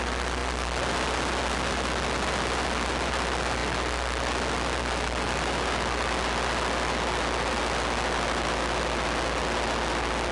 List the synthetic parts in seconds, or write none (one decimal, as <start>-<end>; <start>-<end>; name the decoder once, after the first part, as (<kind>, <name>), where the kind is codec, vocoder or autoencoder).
none

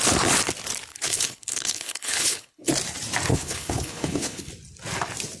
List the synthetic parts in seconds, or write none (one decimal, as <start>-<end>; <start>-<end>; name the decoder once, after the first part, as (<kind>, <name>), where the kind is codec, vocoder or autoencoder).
0.9-2.7 (codec, HILCodec); 3.3-4.5

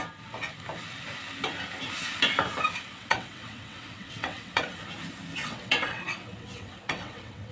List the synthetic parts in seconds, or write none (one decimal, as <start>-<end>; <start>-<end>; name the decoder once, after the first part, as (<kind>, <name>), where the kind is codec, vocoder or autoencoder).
2.9-4.7 (vocoder, WaveNeXt); 5.4-7.5

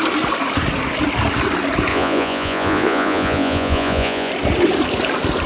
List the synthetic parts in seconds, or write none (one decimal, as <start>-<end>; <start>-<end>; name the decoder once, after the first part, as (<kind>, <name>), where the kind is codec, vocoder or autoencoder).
1.9-4.3 (vocoder, Vocos)

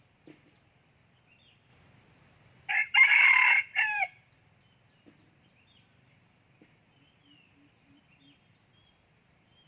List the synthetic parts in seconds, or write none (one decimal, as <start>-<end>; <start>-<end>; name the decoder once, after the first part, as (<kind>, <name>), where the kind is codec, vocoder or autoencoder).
0.0-1.7 (vocoder, BigVGAN v2); 2.7-9.7

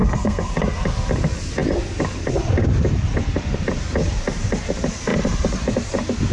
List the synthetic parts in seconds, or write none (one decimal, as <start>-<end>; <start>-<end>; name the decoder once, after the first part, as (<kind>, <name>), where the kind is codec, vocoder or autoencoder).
0.0-0.5 (codec, SNAC)

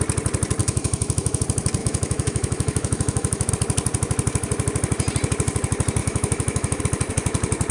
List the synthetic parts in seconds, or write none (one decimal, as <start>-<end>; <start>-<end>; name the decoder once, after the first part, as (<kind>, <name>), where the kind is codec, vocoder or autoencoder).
0.6-1.4 (autoencoder, DAC-VAE); 1.8-3.5; 6.0-6.8